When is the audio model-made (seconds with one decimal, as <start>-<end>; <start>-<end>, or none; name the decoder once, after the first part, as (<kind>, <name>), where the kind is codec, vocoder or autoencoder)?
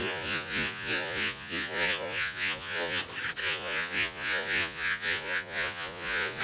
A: 0.0-3.0 (vocoder, Vocos); 3.4-6.4